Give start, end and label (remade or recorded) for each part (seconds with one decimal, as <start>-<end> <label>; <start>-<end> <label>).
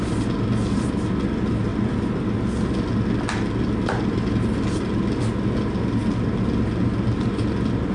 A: 0.0-7.9 recorded